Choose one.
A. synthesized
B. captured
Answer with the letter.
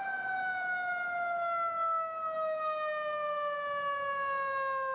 B